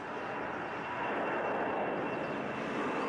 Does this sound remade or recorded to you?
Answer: recorded